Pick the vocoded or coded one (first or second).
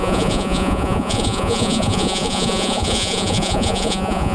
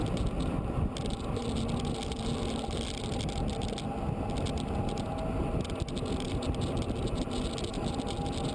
first